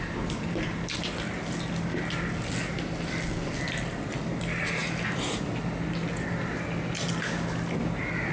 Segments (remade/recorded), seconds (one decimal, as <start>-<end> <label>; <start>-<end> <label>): 0.0-8.3 recorded